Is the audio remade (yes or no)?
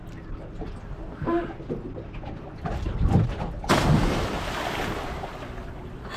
no